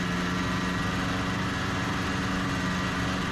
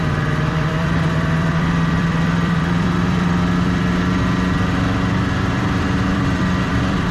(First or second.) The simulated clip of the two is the second